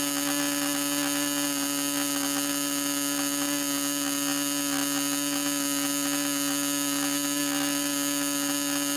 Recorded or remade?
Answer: recorded